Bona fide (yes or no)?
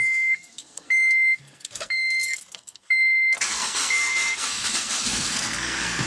no